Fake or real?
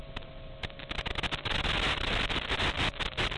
real